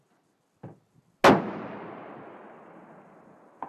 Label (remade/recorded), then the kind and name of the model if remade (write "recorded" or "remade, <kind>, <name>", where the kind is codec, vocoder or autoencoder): recorded